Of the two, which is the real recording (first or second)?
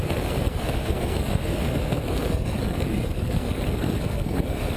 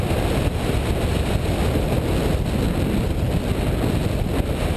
second